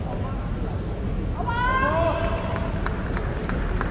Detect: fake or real real